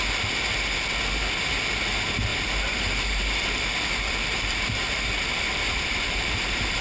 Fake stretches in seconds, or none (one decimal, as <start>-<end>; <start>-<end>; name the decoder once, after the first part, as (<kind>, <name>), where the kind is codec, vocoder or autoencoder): 2.3-6.8 (vocoder, BigVGAN v2)